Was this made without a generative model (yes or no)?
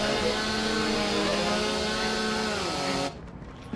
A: yes